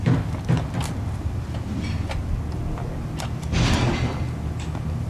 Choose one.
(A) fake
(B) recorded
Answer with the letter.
B